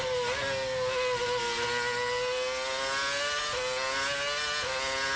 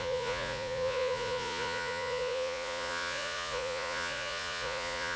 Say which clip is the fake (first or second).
second